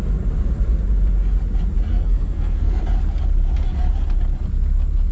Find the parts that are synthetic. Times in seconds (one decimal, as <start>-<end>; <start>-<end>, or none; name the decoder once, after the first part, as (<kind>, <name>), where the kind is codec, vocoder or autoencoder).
1.9-2.8 (codec, SNAC)